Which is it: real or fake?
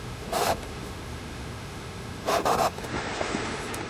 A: fake